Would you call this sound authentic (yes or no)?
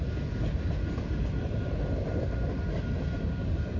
yes